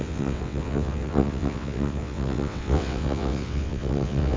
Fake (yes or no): yes